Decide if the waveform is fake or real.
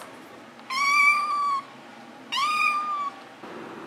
real